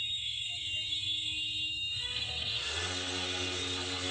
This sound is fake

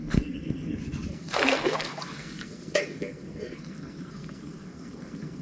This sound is fake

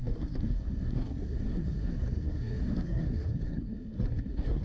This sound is fake